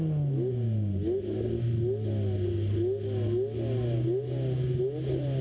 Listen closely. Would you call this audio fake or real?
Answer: real